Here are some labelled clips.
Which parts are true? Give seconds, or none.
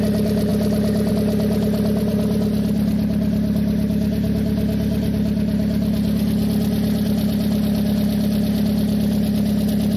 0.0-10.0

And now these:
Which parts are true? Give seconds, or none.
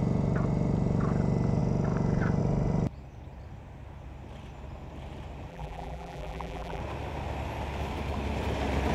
0.0-5.5; 6.8-8.9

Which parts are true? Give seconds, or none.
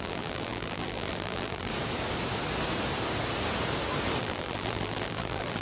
1.7-4.2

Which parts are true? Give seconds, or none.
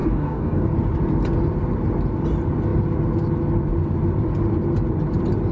0.7-5.5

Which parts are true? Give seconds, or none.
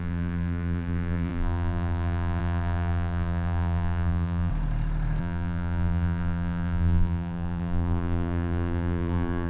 4.5-5.2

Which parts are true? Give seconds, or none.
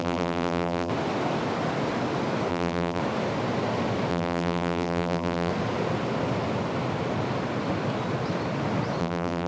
0.9-2.5; 3.0-4.1; 5.5-9.0